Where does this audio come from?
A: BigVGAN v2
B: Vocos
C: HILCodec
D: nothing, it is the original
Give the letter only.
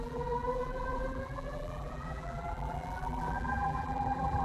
A